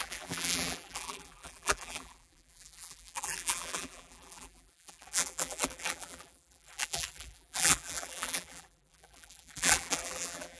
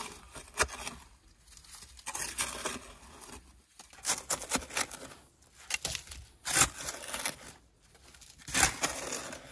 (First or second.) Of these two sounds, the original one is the second